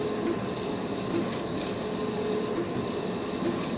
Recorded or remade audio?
recorded